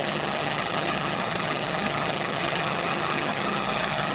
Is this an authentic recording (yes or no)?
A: no